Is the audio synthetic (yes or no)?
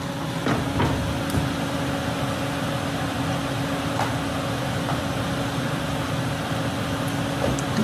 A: no